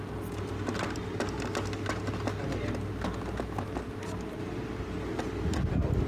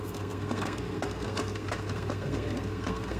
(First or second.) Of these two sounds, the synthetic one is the second